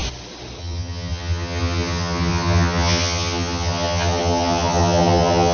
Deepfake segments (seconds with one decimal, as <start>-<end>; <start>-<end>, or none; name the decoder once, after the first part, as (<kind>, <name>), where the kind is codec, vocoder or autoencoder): 0.6-5.5 (vocoder, HiFi-GAN)